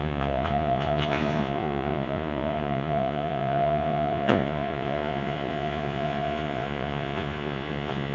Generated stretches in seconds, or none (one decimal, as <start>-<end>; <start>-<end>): 0.0-8.1

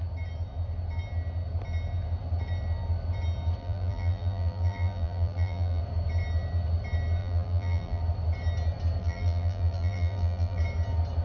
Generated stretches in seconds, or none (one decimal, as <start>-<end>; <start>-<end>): 3.6-5.8; 7.2-8.0; 9.0-10.6

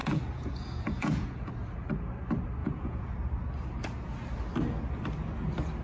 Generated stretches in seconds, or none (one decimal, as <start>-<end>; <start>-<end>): 0.0-1.5; 2.6-3.1

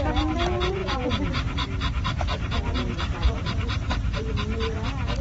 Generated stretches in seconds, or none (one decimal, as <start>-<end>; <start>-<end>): 0.8-3.9